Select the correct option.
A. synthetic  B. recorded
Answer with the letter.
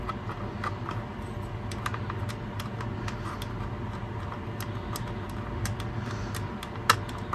B